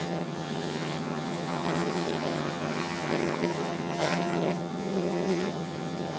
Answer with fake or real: fake